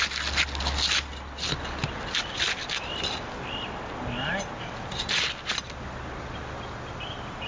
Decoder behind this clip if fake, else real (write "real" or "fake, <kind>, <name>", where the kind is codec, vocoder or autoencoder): real